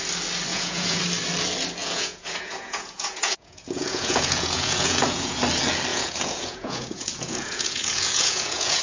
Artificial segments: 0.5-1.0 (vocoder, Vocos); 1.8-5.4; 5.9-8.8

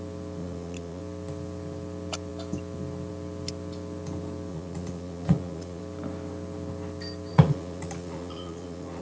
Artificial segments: 0.4-1.0 (vocoder, Vocos); 4.5-5.8; 7.3-9.0

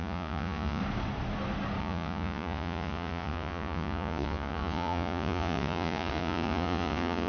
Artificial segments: 0.0-0.8 (vocoder, Vocos); 1.8-7.3

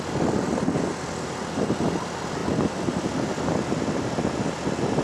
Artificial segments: none

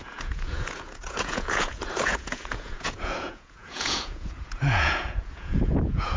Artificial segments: 0.0-6.2 (vocoder, Vocos)

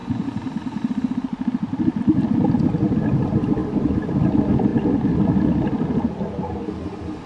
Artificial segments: none

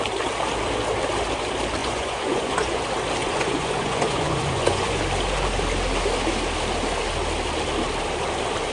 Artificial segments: 1.8-2.8 (vocoder, Vocos); 3.2-5.0

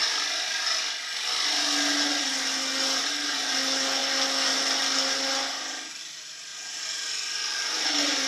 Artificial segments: none